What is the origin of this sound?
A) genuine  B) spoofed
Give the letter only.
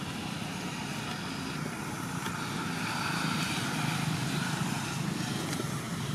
A